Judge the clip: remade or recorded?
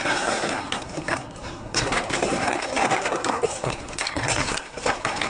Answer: remade